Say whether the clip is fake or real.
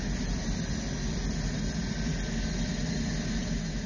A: real